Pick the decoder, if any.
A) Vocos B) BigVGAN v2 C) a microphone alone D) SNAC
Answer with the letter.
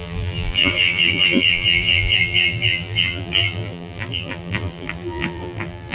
B